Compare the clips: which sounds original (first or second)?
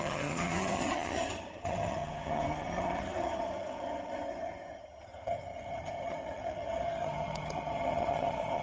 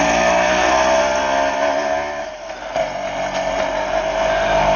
second